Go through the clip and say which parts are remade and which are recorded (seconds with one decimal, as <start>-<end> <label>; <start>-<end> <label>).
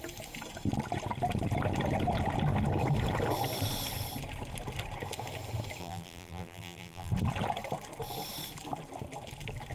0.0-5.8 recorded; 5.8-7.1 remade; 7.1-9.7 recorded